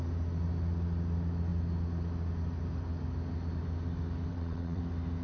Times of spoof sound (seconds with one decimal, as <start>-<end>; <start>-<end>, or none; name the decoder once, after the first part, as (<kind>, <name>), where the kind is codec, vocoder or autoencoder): 4.3-4.8 (vocoder, WaveNeXt)

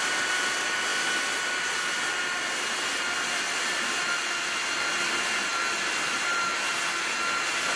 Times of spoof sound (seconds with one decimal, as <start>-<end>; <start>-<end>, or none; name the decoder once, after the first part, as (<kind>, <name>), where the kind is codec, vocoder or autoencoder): none

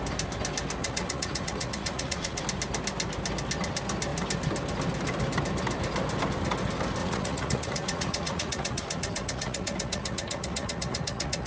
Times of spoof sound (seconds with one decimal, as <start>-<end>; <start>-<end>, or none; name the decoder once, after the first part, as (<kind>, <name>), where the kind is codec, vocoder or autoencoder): 0.8-2.4 (vocoder, Vocos); 7.0-11.5

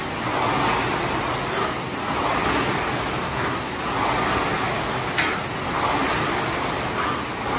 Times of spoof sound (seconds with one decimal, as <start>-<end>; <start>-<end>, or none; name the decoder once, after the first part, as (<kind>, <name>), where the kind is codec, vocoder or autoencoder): 3.2-3.7 (codec, SNAC)

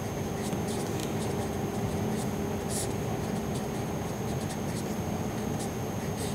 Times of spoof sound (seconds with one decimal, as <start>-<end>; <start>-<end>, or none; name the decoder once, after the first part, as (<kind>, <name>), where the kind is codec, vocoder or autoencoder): none

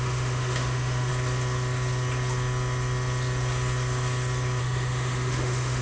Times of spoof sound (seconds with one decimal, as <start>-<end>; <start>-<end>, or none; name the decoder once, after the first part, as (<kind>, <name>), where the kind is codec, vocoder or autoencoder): 0.0-1.1 (autoencoder, DAC-VAE); 4.6-5.8

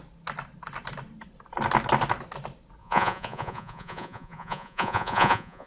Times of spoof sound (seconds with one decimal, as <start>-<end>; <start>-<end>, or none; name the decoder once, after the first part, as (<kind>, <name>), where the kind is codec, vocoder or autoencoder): 2.8-5.7 (vocoder, Vocos)

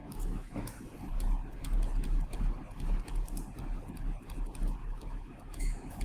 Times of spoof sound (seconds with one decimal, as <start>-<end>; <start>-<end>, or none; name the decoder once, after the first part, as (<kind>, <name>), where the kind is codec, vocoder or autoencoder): 0.0-0.8 (autoencoder, DAC-VAE); 4.8-6.0